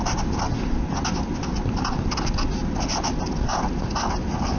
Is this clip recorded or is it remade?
recorded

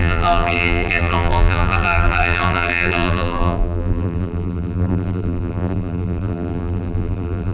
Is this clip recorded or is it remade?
remade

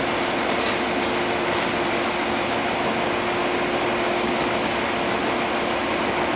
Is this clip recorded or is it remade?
recorded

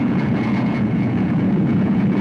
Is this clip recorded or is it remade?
remade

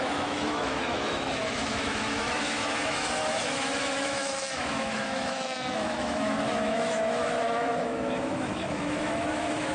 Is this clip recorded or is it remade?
remade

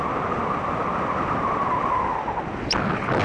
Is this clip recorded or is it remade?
recorded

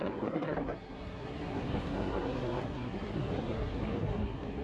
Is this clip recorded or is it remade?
remade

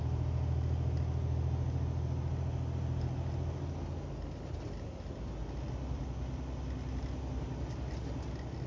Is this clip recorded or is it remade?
recorded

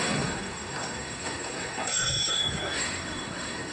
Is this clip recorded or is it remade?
remade